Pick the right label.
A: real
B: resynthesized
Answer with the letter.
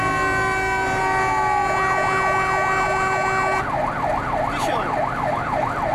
A